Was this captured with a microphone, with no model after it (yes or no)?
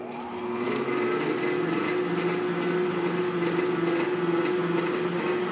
yes